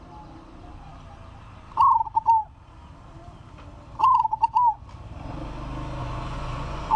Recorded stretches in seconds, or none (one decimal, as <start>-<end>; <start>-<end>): 0.0-6.0